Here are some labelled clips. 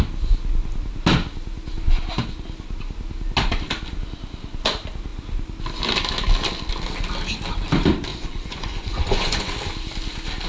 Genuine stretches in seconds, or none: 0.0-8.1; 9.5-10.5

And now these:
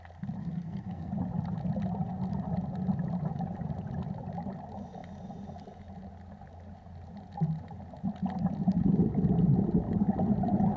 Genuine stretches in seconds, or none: 0.0-0.4; 1.1-10.8

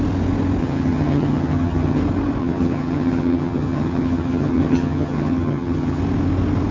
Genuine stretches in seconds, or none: 0.0-0.6; 2.0-2.4; 6.0-6.7